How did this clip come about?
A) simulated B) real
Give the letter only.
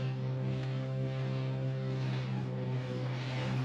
A